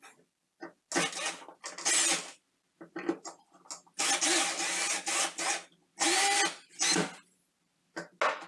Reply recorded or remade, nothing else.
recorded